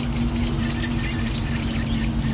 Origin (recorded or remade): recorded